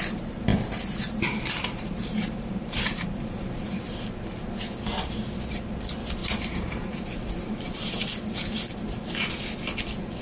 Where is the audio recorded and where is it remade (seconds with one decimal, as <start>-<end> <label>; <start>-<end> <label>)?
0.0-0.5 recorded; 0.5-3.8 remade; 3.8-6.2 recorded; 6.2-7.0 remade; 7.0-10.2 recorded

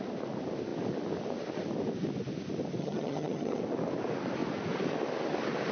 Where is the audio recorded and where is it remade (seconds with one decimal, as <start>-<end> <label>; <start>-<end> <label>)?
0.0-2.8 recorded; 2.8-3.6 remade; 3.6-5.7 recorded

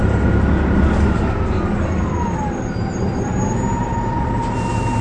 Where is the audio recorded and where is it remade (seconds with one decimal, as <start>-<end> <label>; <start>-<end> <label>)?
0.0-5.0 recorded

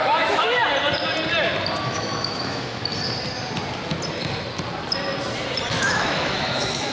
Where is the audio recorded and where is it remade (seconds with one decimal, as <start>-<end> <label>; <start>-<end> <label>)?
0.0-0.6 remade; 0.6-1.8 recorded; 1.8-2.8 remade; 2.8-5.7 recorded; 5.7-6.9 remade

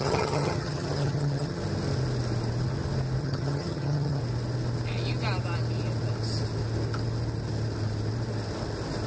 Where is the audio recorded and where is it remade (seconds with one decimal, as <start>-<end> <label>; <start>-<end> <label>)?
0.0-1.6 remade; 1.6-3.2 recorded; 3.2-4.2 remade; 4.2-9.1 recorded

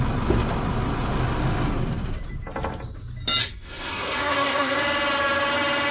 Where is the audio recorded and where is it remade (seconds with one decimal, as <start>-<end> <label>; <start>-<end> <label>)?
0.0-3.4 recorded; 3.4-4.8 remade; 4.8-5.9 recorded

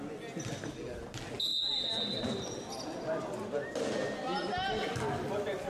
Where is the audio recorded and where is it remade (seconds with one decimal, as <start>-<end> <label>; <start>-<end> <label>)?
0.0-5.7 recorded

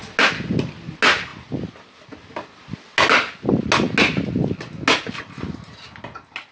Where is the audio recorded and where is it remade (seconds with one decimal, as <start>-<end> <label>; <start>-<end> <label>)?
0.0-6.5 recorded